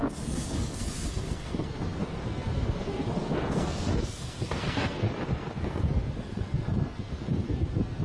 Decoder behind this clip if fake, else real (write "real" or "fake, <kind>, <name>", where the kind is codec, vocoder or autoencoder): fake, codec, SNAC